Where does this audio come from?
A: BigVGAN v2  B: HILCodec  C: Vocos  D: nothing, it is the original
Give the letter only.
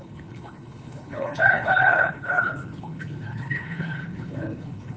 B